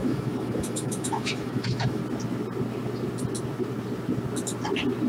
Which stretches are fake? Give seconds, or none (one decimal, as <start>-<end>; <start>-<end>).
0.0-2.0